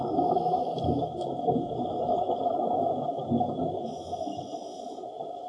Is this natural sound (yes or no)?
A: no